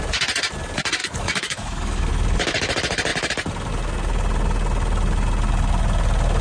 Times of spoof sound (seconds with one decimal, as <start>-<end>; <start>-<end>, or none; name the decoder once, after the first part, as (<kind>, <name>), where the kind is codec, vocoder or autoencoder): 1.0-2.1 (codec, DAC)